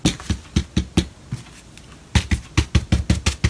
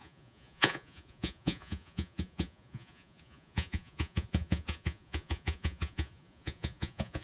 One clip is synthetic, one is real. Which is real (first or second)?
first